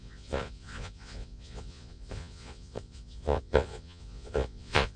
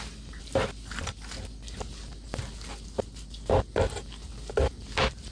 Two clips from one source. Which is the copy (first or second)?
first